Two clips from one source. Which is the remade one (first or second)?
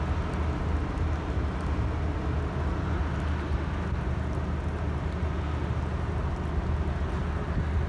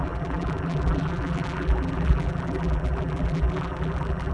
second